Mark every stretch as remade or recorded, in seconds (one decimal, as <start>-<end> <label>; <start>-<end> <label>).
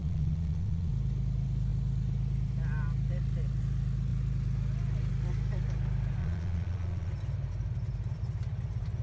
0.0-0.9 remade; 0.9-6.2 recorded; 6.2-7.1 remade; 7.1-9.0 recorded